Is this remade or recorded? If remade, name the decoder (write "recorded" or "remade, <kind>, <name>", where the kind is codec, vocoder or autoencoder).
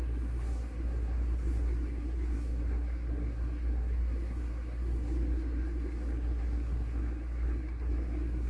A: remade, codec, SNAC